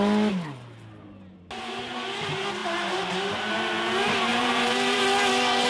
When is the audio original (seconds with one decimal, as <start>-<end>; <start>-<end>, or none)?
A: 0.0-2.6; 3.5-4.3; 5.0-5.7